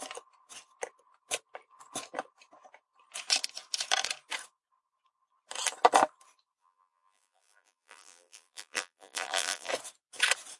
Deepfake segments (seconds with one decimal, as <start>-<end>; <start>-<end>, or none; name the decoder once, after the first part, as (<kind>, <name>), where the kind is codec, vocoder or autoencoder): 6.6-9.7 (vocoder, BigVGAN v2)